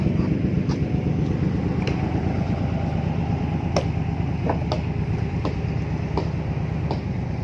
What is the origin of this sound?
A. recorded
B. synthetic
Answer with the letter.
A